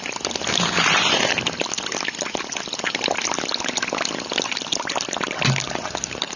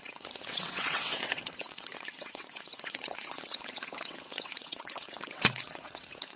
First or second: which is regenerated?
second